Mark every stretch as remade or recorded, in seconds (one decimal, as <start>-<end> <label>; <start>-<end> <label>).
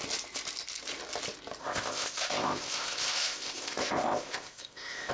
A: 0.0-1.6 recorded; 1.6-5.1 remade